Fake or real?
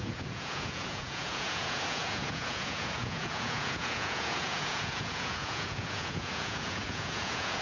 fake